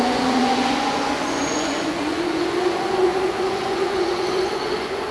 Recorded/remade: remade